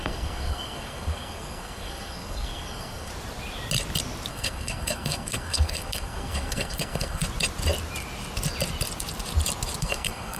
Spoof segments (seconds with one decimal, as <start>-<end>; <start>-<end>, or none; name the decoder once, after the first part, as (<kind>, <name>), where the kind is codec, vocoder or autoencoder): 0.0-3.1 (codec, SNAC); 4.3-7.2; 9.8-10.4